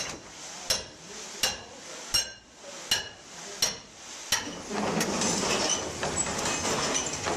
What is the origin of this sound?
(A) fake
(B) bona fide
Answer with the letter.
B